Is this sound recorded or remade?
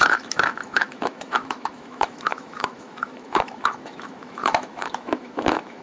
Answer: remade